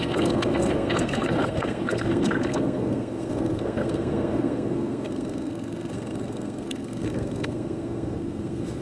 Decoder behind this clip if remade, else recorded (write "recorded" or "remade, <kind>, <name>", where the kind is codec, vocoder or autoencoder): remade, codec, SNAC